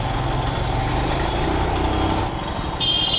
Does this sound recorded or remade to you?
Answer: recorded